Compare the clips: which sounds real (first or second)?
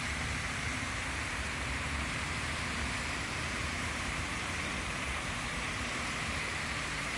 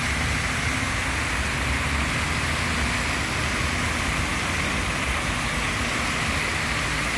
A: second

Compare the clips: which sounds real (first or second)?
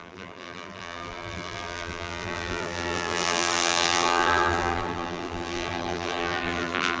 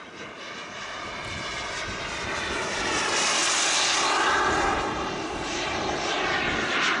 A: second